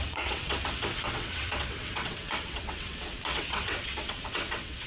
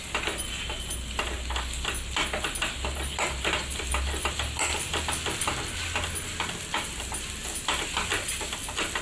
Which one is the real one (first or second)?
second